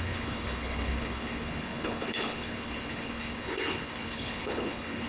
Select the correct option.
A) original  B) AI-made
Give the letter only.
B